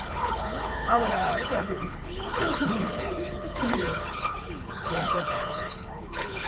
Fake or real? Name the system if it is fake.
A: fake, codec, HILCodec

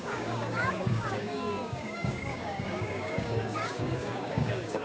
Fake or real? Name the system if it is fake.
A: fake, codec, DAC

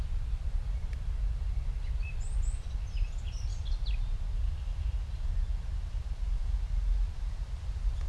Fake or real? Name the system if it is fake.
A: fake, vocoder, BigVGAN v2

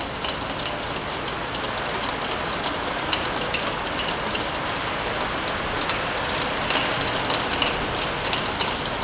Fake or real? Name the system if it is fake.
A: real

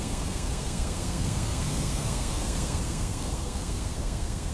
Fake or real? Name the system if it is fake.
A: fake, codec, SNAC